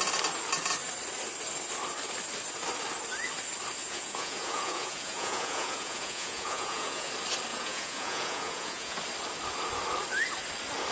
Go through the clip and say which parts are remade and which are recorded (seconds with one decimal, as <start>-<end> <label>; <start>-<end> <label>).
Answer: 0.0-3.8 recorded; 3.8-7.1 remade; 7.1-7.5 recorded; 7.5-9.0 remade; 9.0-10.9 recorded